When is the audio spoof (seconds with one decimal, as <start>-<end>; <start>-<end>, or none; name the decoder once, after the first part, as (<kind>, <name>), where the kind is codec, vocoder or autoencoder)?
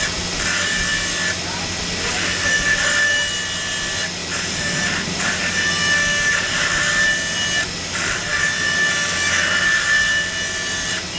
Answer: 4.2-5.7 (vocoder, BigVGAN v2)